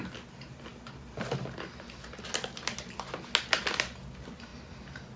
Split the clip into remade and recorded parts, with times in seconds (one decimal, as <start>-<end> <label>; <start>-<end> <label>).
0.0-4.5 recorded; 4.5-5.2 remade